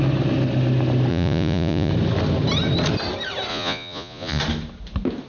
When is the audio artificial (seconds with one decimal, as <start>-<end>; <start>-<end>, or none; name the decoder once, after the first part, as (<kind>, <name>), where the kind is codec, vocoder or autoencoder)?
1.1-1.9 (vocoder, Vocos); 3.5-4.4